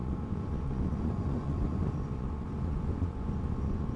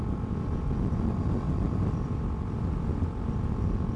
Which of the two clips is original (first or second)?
second